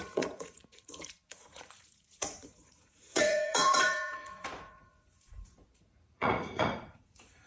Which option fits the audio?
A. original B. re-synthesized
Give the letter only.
B